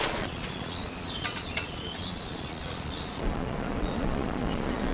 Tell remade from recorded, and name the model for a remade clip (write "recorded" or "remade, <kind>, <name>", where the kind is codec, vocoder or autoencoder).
remade, vocoder, Vocos